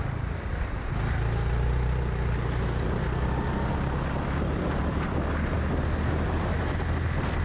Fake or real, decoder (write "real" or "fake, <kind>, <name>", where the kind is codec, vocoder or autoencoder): real